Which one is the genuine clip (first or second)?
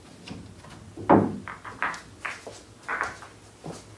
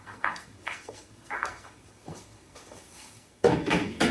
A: first